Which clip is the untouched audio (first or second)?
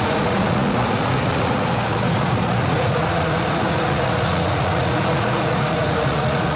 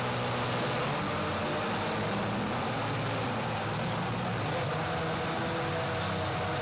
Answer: second